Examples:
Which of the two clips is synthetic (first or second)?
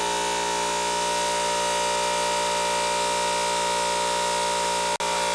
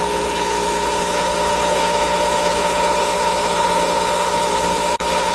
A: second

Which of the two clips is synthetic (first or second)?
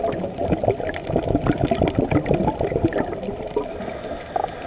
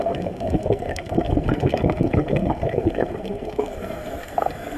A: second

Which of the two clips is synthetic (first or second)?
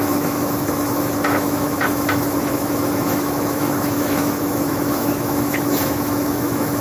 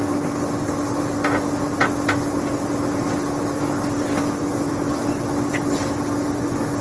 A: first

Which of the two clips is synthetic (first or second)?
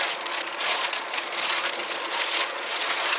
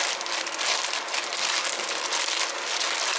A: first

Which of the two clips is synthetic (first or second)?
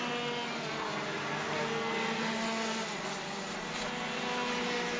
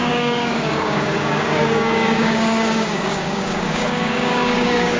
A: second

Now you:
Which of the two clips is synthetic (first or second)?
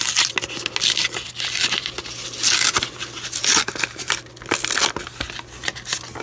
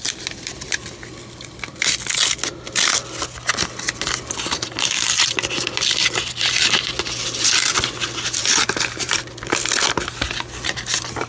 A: second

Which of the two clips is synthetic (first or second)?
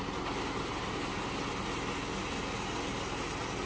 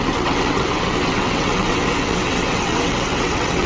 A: second